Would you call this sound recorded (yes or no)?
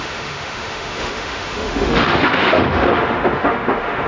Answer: no